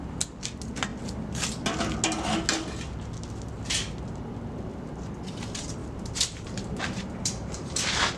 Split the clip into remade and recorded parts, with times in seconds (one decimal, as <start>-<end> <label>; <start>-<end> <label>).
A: 0.0-5.8 recorded; 5.8-8.2 remade